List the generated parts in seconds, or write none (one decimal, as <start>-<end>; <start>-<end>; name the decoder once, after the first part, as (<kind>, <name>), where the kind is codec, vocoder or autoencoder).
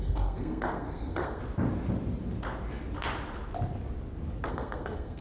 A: 0.0-1.4 (codec, SNAC); 4.5-5.2